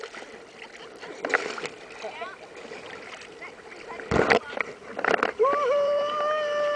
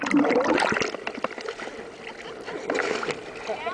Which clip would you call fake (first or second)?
first